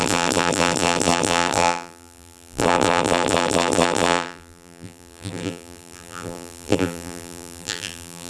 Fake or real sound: fake